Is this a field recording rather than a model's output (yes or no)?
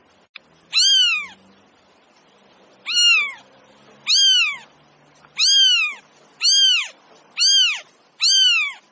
yes